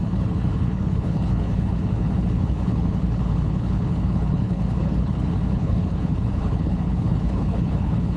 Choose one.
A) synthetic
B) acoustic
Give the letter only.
A